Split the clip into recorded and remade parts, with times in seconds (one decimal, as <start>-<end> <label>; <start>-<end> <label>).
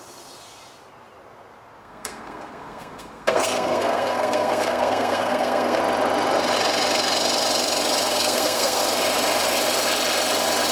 0.0-1.8 recorded; 1.8-5.8 remade; 5.8-8.1 recorded; 8.1-8.8 remade; 8.8-10.7 recorded